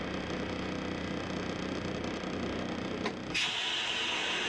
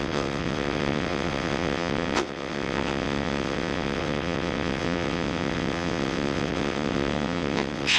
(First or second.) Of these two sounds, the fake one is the second